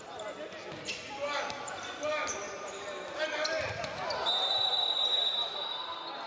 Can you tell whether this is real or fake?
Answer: real